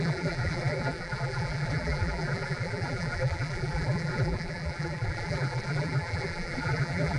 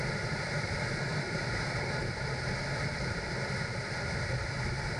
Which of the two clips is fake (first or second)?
first